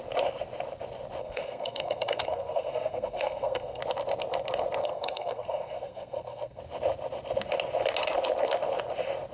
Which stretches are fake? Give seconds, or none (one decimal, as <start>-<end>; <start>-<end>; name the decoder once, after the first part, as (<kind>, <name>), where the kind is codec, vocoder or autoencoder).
1.2-3.8 (codec, SNAC); 4.8-6.6